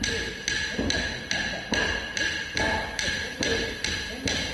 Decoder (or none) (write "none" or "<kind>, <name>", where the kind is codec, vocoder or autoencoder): none